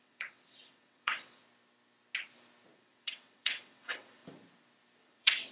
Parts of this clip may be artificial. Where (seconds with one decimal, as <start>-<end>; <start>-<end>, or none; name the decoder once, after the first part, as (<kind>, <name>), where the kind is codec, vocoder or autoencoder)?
0.0-1.4 (vocoder, WaveNeXt); 2.8-4.2; 5.0-5.5